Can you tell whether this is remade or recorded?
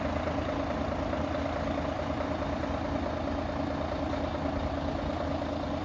recorded